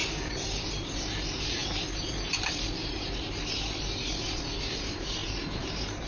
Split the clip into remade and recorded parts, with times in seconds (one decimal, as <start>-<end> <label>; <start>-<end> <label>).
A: 0.0-0.6 recorded; 0.6-6.1 remade